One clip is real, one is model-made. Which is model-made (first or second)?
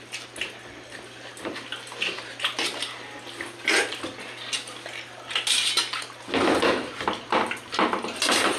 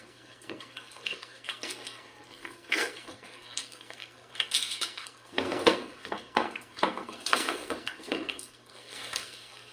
second